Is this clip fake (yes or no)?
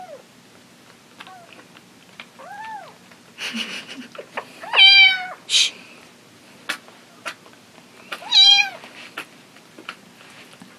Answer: no